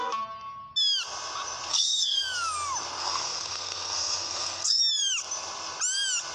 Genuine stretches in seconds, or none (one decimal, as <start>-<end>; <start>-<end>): 0.0-1.7; 2.2-3.0; 4.8-6.3